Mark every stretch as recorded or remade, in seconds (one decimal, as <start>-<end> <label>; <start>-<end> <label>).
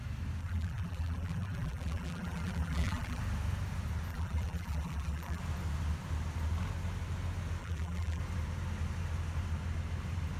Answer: 0.0-0.4 recorded; 0.4-3.2 remade; 3.2-4.1 recorded; 4.1-5.4 remade; 5.4-7.6 recorded; 7.6-8.2 remade; 8.2-10.4 recorded